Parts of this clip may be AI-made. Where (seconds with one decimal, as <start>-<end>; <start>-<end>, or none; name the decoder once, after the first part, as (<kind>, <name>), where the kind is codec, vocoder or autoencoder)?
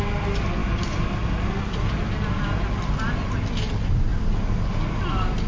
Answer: 0.6-3.4 (vocoder, BigVGAN v2)